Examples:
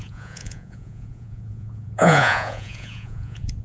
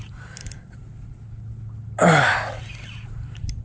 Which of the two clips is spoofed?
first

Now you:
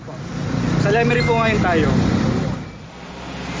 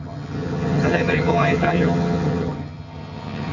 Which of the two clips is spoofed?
second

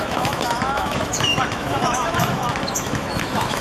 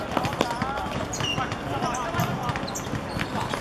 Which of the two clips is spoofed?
first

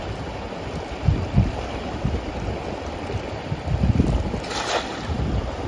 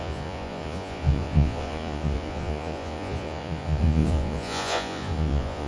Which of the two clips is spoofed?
second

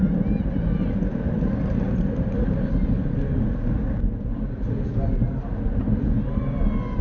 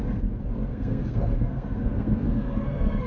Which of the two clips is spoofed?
second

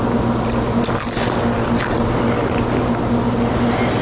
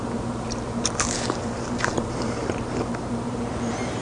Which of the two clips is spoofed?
second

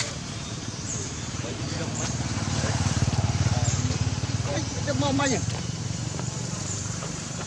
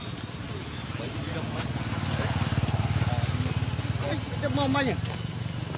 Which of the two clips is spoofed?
first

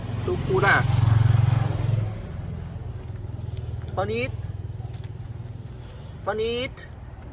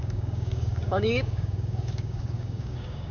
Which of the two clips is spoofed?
second